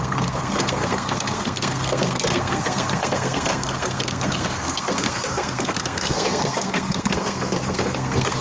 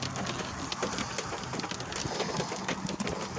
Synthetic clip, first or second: first